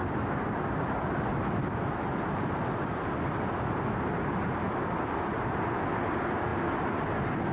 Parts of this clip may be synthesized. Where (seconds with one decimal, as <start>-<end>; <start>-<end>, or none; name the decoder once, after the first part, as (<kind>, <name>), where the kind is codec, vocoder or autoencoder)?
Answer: none